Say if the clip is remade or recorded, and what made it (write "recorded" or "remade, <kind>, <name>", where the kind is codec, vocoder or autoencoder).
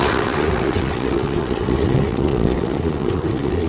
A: remade, vocoder, WaveNeXt